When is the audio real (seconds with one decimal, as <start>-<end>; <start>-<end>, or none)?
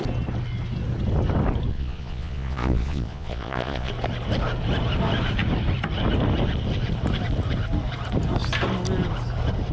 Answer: 0.0-1.7; 3.9-9.7